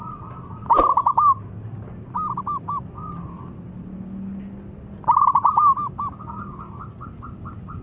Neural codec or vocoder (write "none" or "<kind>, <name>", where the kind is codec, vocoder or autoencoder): none